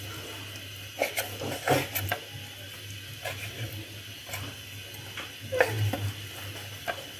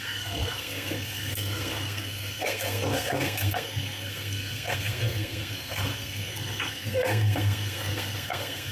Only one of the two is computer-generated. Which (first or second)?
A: second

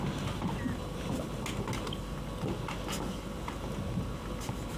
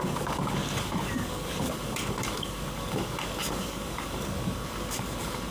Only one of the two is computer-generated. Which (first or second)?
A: second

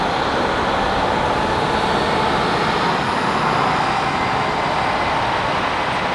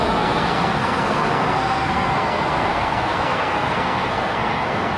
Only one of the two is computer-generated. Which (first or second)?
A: second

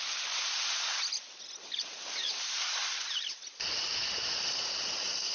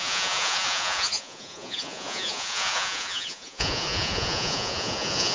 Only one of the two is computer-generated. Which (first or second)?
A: second